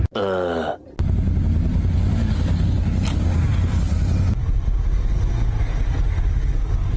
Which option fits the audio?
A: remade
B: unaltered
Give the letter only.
B